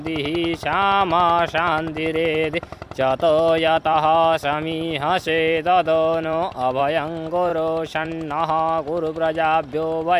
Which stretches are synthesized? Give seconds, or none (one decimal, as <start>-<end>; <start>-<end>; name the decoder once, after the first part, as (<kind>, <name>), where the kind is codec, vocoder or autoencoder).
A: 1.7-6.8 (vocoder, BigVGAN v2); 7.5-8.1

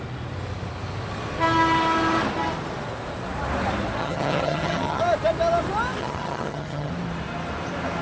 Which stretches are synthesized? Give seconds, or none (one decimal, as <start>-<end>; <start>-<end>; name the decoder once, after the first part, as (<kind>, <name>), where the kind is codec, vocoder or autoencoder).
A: 4.0-5.0 (vocoder, HiFi-GAN); 6.0-6.9

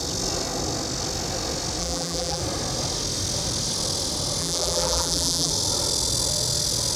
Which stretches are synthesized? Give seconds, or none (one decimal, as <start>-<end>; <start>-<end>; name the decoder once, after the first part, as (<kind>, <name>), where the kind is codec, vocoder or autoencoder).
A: 1.8-2.4 (vocoder, BigVGAN v2); 4.4-5.5